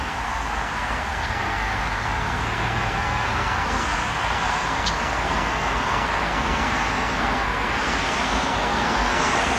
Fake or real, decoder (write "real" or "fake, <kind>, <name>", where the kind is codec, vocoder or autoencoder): fake, codec, SNAC